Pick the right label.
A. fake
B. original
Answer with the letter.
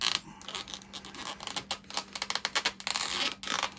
B